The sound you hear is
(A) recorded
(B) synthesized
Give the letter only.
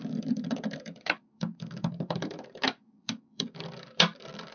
B